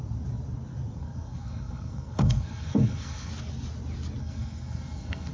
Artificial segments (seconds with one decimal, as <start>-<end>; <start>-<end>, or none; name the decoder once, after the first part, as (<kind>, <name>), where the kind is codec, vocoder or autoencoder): 1.0-3.3 (codec, SNAC); 4.2-5.3